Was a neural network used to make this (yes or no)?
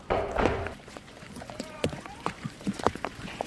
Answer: yes